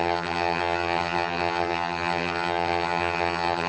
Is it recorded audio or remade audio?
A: remade